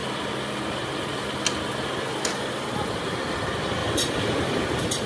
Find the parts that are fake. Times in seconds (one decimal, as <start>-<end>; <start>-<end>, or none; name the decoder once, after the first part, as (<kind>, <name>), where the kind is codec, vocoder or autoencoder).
3.8-5.1 (vocoder, BigVGAN v2)